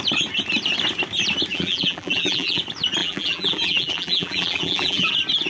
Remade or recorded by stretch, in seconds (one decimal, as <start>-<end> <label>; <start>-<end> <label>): 0.0-1.5 recorded; 1.5-2.6 remade; 2.6-3.0 recorded; 3.0-5.1 remade; 5.1-5.5 recorded